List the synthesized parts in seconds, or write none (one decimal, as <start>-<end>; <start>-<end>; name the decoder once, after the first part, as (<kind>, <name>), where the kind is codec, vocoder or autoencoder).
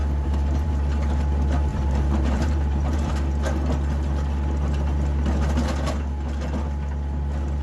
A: 0.0-0.7 (vocoder, BigVGAN v2); 1.7-3.1